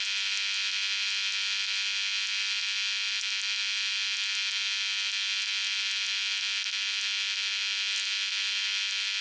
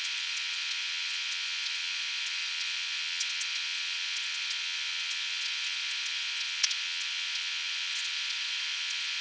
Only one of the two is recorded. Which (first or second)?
first